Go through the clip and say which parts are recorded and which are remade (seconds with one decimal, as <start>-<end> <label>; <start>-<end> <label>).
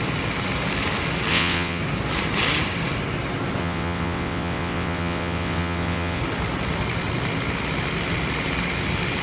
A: 0.0-1.3 recorded; 1.3-1.8 remade; 1.8-3.6 recorded; 3.6-6.2 remade; 6.2-9.2 recorded